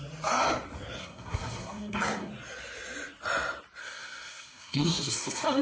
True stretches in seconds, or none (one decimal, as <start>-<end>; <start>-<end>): 0.0-1.0; 2.3-3.8